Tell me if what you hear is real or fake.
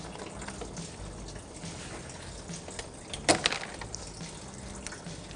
real